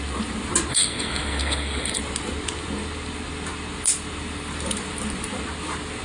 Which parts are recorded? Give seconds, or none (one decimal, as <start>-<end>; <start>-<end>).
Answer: 0.0-0.7; 2.0-6.0